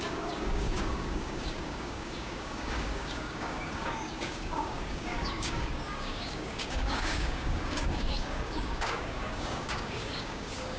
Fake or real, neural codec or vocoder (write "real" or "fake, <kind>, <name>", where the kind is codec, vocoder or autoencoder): fake, codec, DAC